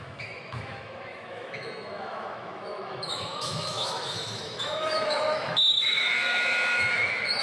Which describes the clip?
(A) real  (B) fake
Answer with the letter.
B